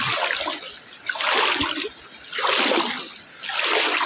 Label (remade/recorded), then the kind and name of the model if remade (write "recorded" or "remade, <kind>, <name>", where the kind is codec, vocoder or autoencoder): recorded